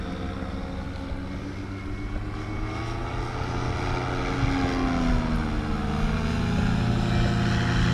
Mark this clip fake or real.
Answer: real